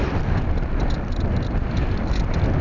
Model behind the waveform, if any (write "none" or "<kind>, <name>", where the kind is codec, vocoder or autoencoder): vocoder, BigVGAN v2